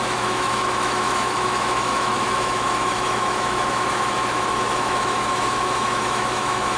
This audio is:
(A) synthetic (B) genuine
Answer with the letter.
A